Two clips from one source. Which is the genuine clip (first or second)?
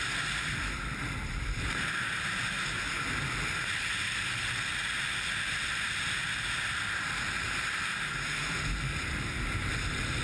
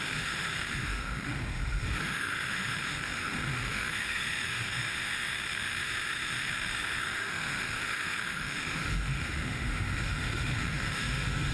first